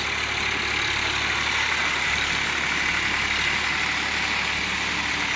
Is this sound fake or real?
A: real